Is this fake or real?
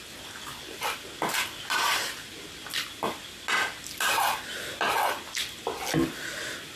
real